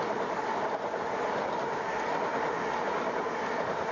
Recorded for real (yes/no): yes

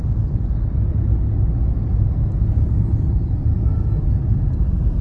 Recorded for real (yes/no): yes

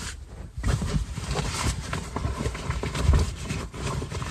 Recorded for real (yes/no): no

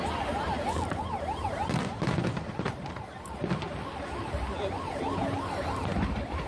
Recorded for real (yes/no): yes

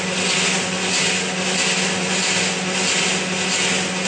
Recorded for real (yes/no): yes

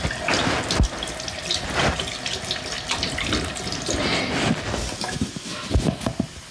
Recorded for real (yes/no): yes